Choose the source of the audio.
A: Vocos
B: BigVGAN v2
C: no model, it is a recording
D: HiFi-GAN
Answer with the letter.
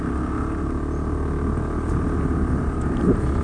C